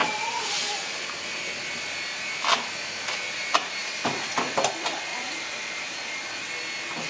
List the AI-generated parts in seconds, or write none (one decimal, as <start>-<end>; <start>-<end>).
0.0-1.2; 2.5-3.8; 5.1-5.8